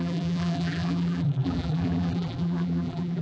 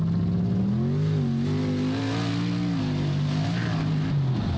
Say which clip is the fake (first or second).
first